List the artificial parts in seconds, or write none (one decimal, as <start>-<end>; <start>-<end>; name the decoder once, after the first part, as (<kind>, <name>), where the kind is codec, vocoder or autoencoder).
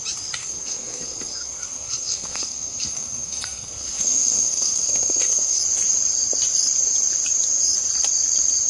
0.4-5.6 (codec, SNAC)